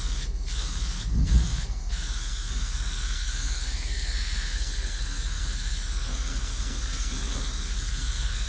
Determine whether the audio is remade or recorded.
remade